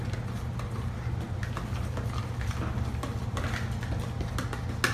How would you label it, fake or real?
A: real